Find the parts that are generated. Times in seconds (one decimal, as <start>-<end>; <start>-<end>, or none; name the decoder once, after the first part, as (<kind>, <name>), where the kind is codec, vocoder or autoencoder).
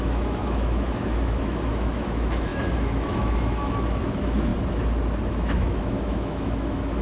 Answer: 0.0-4.5 (autoencoder, DAC-VAE); 5.3-7.0